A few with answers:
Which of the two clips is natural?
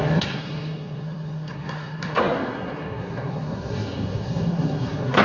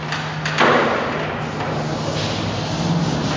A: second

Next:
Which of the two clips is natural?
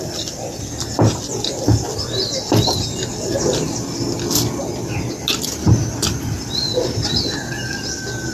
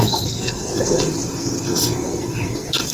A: first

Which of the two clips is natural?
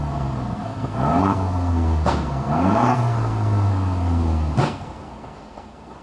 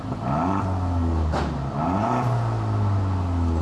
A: second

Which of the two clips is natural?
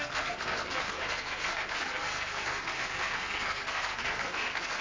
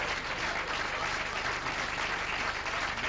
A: second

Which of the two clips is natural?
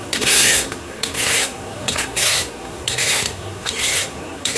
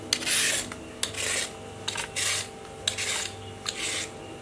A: second